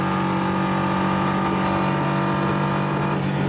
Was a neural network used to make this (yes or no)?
no